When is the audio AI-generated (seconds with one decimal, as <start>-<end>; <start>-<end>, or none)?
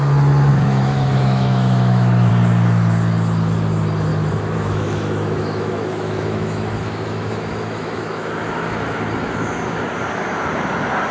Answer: 0.5-2.3; 4.1-9.0